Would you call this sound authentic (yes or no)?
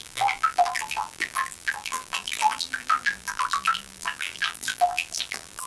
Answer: no